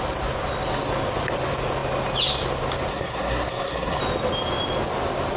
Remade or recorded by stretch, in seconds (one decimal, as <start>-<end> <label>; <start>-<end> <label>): 0.0-2.9 recorded; 2.9-4.0 remade; 4.0-5.4 recorded